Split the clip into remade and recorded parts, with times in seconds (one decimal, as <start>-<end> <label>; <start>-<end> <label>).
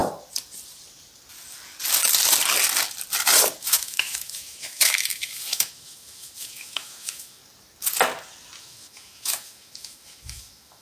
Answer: 0.0-3.6 recorded; 3.6-7.4 remade; 7.4-8.6 recorded; 8.6-10.8 remade